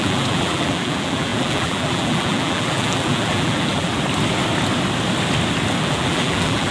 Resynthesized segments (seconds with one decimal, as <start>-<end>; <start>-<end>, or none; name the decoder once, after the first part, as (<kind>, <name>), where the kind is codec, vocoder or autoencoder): 0.0-3.9 (vocoder, BigVGAN v2); 5.8-6.7